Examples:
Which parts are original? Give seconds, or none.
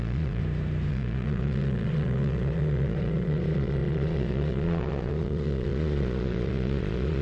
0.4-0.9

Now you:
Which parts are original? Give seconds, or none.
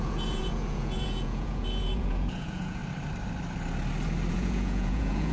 2.8-4.3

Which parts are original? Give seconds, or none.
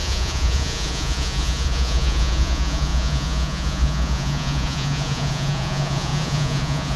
none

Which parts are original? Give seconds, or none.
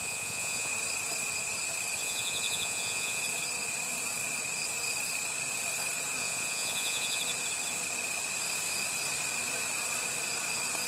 0.7-2.0; 3.2-6.2; 7.2-10.9